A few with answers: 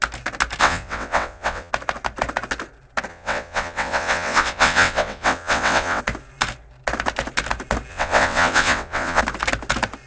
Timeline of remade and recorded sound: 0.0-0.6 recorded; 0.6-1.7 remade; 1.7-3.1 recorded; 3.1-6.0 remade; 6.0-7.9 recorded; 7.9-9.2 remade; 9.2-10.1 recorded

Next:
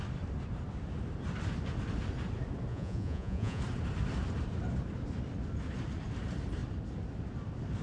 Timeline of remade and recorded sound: 0.0-2.7 recorded; 2.7-3.6 remade; 3.6-7.8 recorded

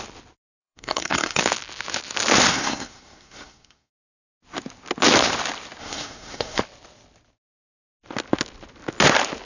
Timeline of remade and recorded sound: 0.0-0.6 recorded; 0.6-1.4 remade; 1.4-2.5 recorded; 2.5-4.0 remade; 4.0-5.8 recorded; 5.8-6.6 remade; 6.6-9.5 recorded